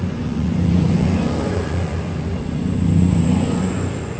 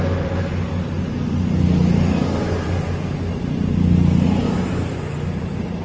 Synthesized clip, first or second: first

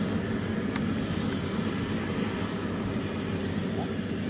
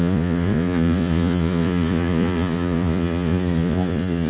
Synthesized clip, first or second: second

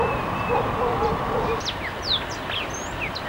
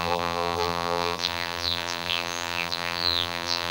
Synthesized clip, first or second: second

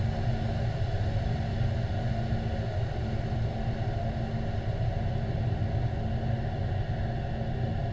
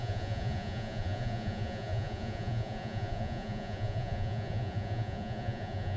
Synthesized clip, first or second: second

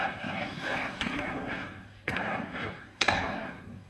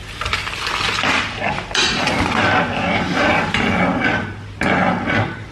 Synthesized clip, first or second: first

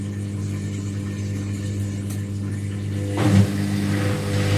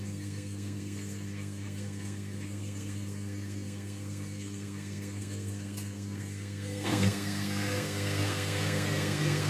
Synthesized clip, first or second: second